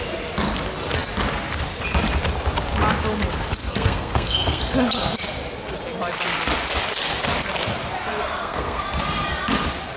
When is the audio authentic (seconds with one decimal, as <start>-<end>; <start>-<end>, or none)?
0.0-3.6; 4.6-8.1; 8.8-10.0